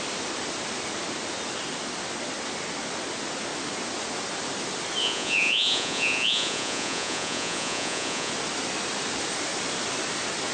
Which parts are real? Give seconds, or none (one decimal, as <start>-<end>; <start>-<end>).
0.0-5.0; 8.3-10.5